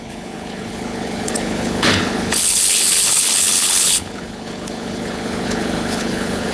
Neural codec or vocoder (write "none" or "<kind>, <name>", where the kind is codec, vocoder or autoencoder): codec, HILCodec